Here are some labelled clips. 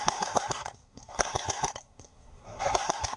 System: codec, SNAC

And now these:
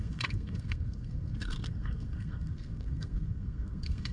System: codec, SNAC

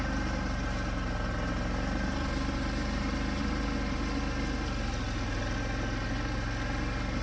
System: none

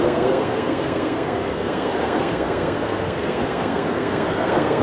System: codec, SNAC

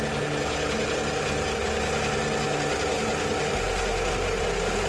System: none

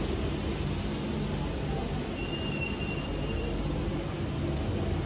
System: none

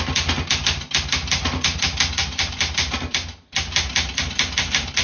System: none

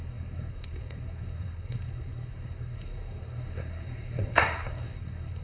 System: codec, SNAC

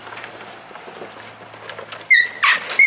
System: none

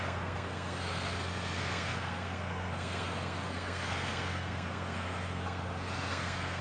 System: codec, SNAC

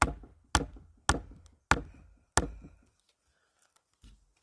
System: none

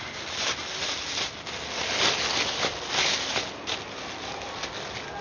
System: none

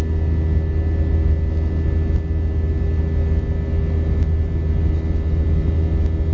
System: none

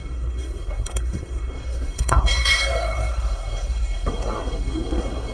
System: codec, SNAC